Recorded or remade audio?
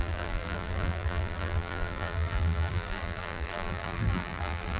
remade